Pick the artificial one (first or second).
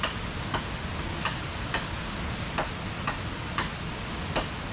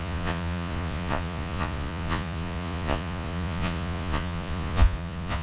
second